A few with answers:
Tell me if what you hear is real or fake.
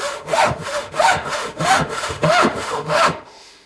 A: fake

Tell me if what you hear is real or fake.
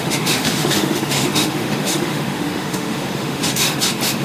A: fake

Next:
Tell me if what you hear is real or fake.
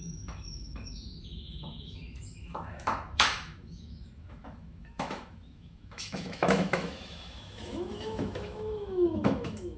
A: fake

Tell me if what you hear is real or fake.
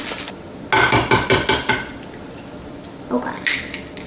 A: real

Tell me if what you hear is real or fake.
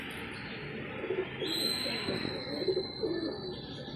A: real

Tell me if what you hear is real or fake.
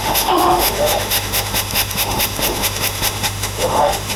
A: fake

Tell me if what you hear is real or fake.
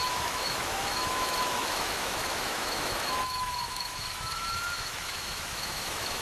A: fake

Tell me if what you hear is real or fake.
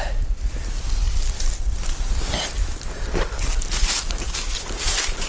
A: real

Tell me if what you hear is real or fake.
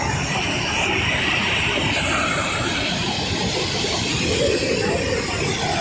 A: real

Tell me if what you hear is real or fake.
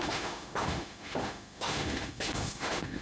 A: fake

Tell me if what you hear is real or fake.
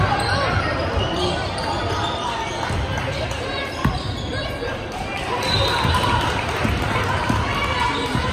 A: real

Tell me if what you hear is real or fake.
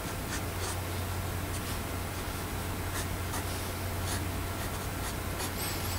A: real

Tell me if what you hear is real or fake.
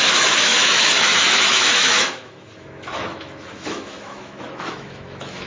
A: fake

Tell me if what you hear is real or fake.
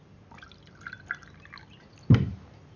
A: real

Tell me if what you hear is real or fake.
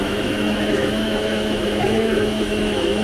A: fake